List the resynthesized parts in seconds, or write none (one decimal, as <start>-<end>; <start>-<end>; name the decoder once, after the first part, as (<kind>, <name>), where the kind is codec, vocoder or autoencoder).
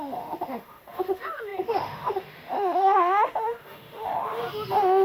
0.0-5.0 (autoencoder, DAC-VAE)